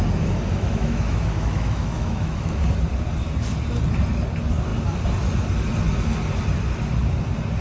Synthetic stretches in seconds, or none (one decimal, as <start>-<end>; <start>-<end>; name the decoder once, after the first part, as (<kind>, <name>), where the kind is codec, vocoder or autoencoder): 0.5-2.6 (autoencoder, DAC-VAE)